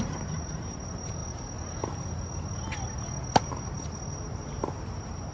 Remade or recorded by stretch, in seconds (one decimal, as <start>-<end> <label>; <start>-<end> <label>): 0.0-1.2 remade; 1.2-3.4 recorded; 3.4-5.3 remade